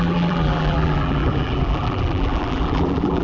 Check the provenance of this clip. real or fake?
fake